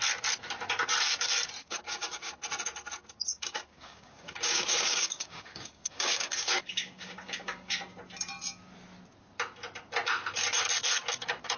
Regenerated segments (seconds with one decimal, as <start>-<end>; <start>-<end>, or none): 1.6-2.3; 3.3-7.8